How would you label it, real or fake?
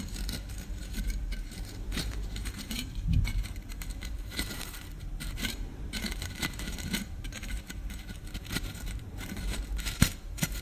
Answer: fake